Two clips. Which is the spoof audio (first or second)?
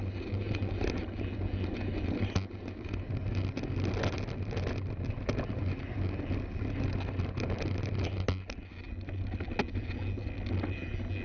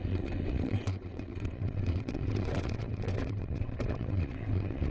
second